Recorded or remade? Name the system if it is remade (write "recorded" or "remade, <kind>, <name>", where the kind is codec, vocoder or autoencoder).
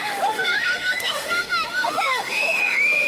remade, autoencoder, DAC-VAE